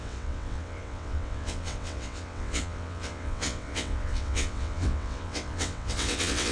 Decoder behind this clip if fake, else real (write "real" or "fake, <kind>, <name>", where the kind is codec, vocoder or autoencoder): fake, vocoder, WaveNeXt